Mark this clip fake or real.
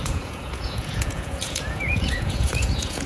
fake